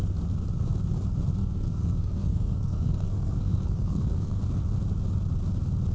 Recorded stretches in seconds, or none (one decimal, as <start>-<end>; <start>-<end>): 0.0-1.4; 4.4-5.9